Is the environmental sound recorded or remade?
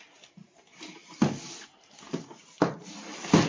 recorded